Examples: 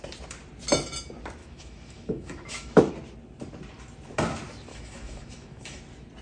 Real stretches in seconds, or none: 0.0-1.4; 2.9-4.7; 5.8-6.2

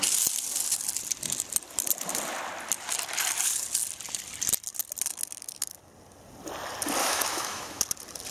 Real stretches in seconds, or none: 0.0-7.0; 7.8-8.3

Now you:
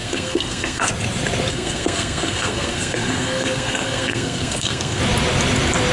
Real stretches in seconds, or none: 0.9-1.5; 5.0-5.9

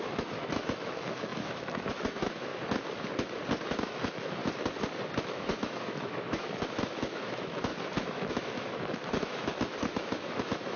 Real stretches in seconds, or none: 2.5-3.6; 4.4-5.2; 7.7-8.3

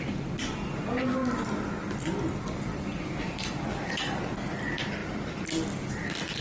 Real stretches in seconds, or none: 0.0-2.7; 4.2-5.0; 5.9-6.4